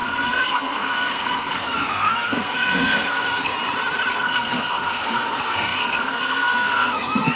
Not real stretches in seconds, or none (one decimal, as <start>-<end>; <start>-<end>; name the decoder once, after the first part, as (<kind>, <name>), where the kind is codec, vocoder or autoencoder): 0.0-3.5 (codec, SNAC); 4.1-7.4